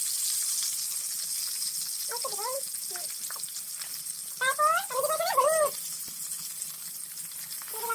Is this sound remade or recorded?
recorded